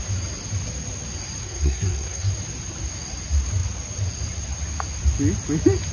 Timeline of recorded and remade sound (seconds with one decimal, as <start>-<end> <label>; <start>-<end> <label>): 0.0-1.4 recorded; 1.4-2.3 remade; 2.3-5.9 recorded